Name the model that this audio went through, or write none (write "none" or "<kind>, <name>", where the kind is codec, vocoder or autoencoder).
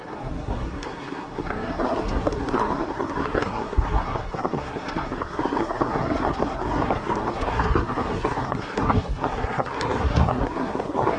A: codec, SNAC